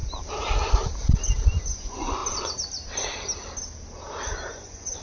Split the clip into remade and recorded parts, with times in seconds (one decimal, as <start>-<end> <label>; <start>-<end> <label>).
0.0-1.6 recorded; 1.6-2.2 remade; 2.2-4.5 recorded; 4.5-5.0 remade